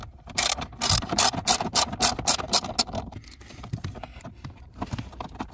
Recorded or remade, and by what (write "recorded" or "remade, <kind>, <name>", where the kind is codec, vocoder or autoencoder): recorded